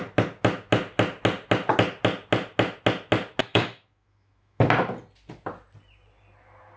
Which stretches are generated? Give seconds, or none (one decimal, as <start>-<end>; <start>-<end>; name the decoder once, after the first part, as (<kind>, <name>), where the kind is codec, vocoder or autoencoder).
3.4-4.6 (autoencoder, DAC-VAE)